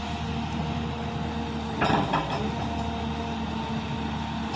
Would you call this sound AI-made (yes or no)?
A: no